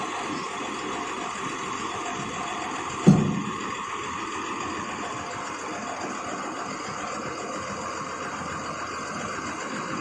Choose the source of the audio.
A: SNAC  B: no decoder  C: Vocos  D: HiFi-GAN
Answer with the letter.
B